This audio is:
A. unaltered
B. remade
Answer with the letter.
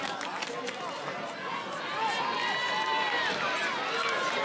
A